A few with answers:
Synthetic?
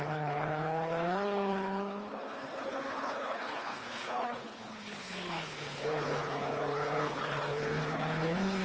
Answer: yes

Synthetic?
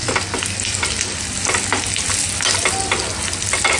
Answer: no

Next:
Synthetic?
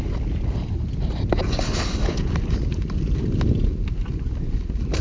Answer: no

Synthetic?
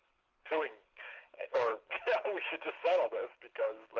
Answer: yes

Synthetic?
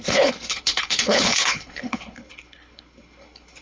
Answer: yes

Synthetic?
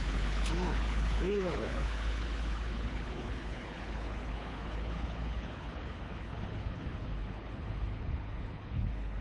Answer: yes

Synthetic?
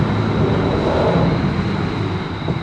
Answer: no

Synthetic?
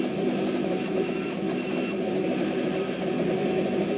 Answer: no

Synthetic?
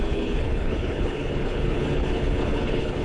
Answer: yes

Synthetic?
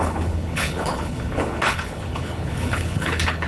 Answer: yes